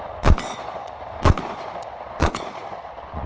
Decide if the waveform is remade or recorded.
remade